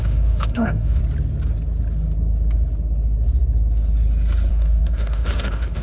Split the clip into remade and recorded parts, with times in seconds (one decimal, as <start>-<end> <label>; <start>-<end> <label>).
0.0-1.0 remade; 1.0-4.5 recorded; 4.5-5.8 remade